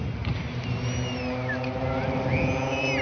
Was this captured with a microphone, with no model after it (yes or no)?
yes